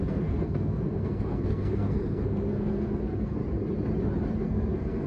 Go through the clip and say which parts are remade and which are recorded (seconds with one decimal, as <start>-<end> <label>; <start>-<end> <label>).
0.0-3.4 remade; 3.4-4.4 recorded; 4.4-5.1 remade